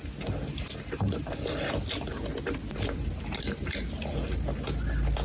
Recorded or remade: recorded